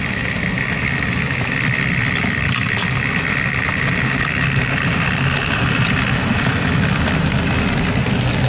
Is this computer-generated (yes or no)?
no